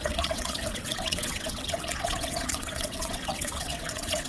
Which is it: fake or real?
fake